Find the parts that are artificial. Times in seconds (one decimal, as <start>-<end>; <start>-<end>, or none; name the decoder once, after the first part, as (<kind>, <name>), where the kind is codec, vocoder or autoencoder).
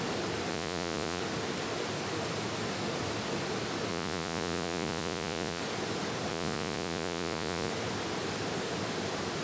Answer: 0.5-1.2 (vocoder, Vocos); 3.9-5.6; 6.3-7.7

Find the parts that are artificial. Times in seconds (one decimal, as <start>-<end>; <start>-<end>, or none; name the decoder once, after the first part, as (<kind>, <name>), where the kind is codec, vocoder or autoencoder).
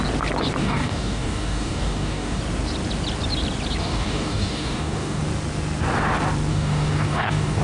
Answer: 0.6-2.4 (codec, DAC); 3.8-5.2; 6.5-7.6